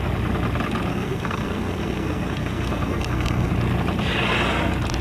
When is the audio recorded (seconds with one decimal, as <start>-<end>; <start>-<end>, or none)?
0.0-0.9; 3.5-5.0